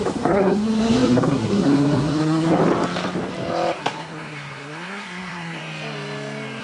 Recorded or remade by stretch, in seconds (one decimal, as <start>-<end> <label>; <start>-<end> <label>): 0.0-2.6 remade; 2.6-3.8 recorded; 3.8-5.6 remade; 5.6-6.6 recorded